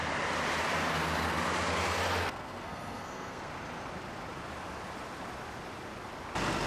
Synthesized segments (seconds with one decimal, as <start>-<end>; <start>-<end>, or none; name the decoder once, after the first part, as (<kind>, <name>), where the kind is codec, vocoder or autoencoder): 2.2-3.5 (codec, SNAC)